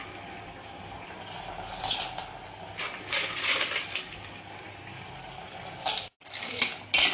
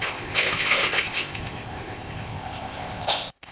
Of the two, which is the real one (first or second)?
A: first